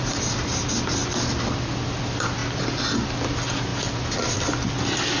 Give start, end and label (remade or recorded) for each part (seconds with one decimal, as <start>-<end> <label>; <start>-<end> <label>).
0.0-5.2 recorded